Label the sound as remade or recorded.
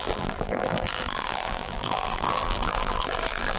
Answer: remade